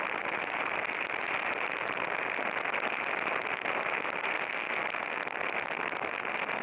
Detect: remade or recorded recorded